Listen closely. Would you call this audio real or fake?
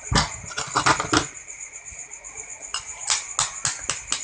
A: real